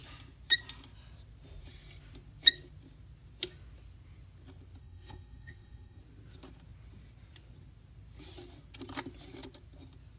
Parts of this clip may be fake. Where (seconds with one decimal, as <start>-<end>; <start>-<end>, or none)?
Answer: 4.8-6.0